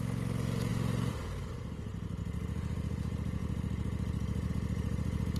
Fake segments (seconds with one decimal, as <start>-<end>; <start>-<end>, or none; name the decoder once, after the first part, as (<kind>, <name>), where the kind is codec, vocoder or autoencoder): 0.7-1.5 (vocoder, BigVGAN v2)